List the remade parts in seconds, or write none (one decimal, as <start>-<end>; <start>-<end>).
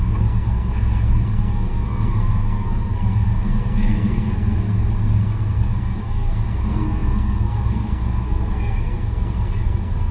0.0-10.1